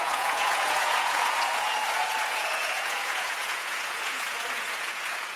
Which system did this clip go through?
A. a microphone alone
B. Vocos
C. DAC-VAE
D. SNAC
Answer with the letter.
B